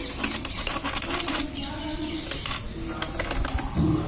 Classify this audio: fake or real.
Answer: real